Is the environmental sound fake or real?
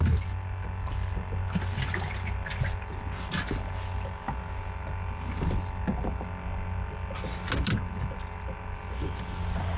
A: real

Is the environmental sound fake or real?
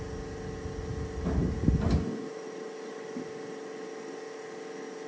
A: real